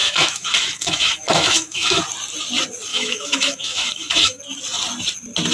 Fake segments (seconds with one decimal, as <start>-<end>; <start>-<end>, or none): 0.0-2.0; 2.9-4.4